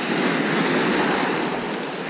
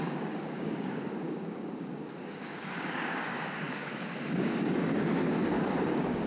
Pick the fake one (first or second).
second